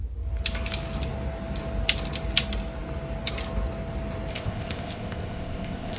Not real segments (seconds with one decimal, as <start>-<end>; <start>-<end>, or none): 4.3-6.0